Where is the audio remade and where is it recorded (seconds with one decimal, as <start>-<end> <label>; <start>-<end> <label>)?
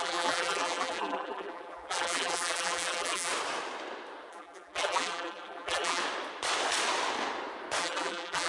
0.0-3.3 remade; 3.3-4.3 recorded; 4.3-6.0 remade; 6.0-7.8 recorded; 7.8-8.5 remade